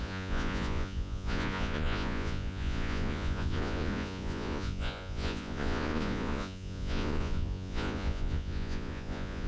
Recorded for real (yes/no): no